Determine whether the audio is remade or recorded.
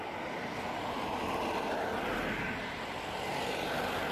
recorded